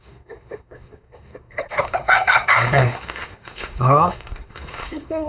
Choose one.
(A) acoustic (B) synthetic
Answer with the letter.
B